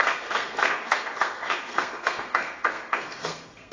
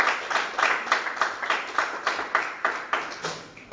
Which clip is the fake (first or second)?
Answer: first